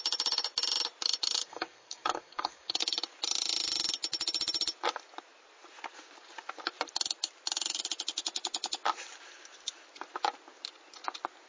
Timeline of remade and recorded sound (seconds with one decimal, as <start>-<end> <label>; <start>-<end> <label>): 0.0-1.4 recorded; 1.4-2.8 remade; 2.8-11.5 recorded